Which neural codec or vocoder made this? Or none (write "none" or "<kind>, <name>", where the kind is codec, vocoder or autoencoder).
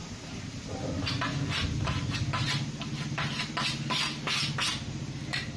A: none